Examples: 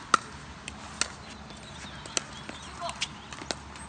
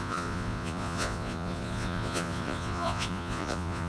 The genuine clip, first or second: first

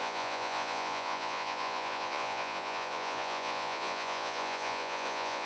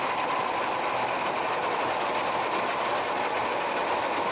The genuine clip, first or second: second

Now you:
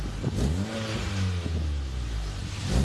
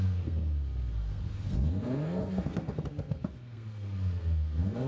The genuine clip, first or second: first